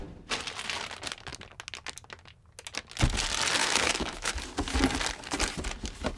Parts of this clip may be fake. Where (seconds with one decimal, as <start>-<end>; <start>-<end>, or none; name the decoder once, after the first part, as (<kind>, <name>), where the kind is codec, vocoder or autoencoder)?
3.6-4.3 (autoencoder, DAC-VAE)